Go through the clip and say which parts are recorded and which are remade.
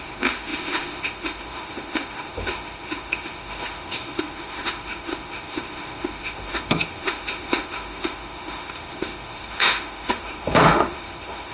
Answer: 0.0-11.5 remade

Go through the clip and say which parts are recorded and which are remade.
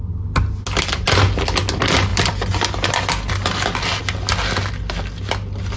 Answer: 0.0-5.8 recorded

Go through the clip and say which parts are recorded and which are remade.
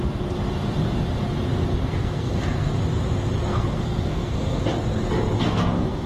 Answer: 0.0-1.7 recorded; 1.7-2.7 remade; 2.7-3.5 recorded; 3.5-4.6 remade; 4.6-5.4 recorded; 5.4-6.1 remade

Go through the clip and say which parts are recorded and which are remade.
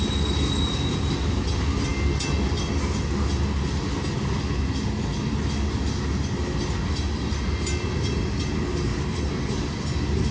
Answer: 0.0-10.3 recorded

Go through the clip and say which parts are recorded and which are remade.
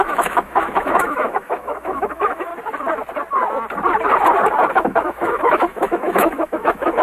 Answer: 0.0-2.5 remade; 2.5-4.7 recorded; 4.7-7.0 remade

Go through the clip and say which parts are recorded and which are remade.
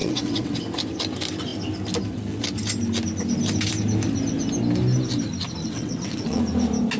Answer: 0.0-0.6 remade; 0.6-5.6 recorded; 5.6-6.4 remade; 6.4-7.0 recorded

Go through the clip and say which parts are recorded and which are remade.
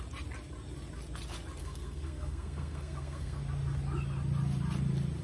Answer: 0.0-1.6 recorded; 1.6-3.4 remade; 3.4-5.2 recorded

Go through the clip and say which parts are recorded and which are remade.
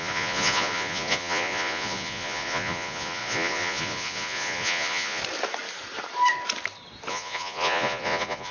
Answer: 0.0-5.2 remade; 5.2-7.1 recorded; 7.1-8.5 remade